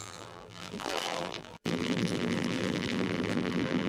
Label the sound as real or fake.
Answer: fake